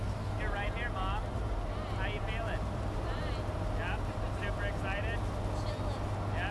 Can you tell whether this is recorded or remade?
recorded